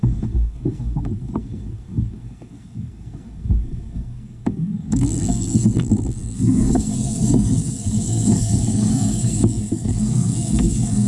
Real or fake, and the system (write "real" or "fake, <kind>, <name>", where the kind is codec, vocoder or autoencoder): fake, codec, SNAC